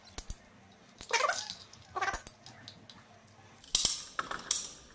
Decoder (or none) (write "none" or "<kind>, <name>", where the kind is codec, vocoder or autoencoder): none